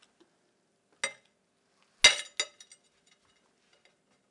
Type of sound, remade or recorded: recorded